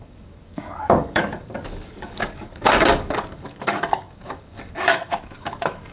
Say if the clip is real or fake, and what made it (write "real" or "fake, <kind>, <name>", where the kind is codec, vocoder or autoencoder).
fake, codec, DAC